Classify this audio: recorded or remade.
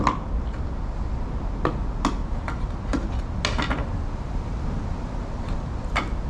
recorded